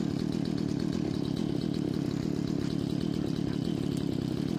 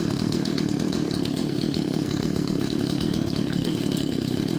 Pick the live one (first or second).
first